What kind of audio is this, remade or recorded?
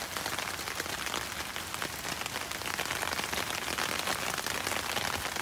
recorded